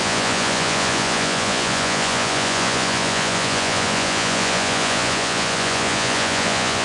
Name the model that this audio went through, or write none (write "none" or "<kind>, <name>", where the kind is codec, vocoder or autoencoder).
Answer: vocoder, Vocos